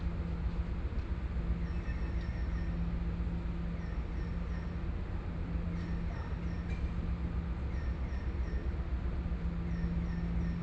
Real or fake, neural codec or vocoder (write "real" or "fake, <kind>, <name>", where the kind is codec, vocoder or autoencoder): real